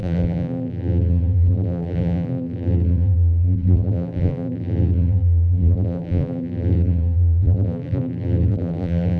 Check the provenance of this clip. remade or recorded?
remade